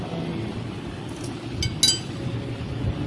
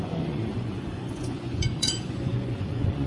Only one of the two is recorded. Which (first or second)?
first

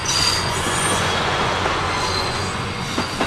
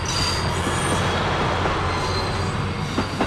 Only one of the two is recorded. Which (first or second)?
second